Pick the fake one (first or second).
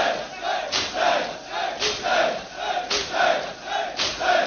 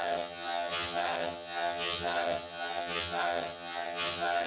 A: second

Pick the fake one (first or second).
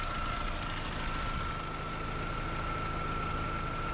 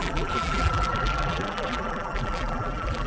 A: second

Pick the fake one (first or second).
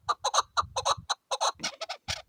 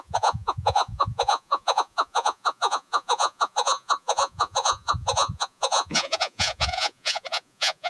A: second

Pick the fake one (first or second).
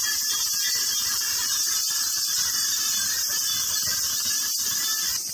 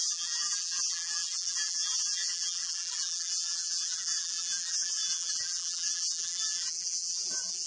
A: second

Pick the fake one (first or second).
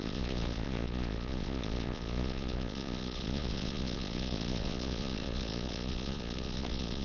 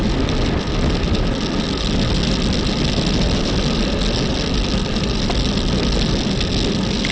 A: first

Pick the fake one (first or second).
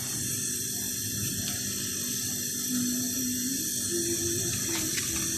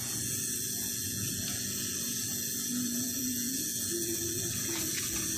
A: second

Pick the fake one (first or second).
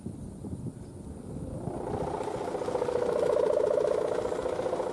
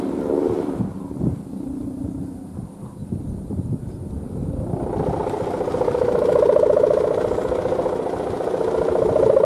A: second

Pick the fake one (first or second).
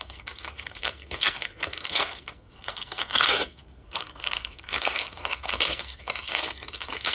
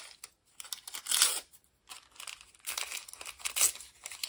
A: first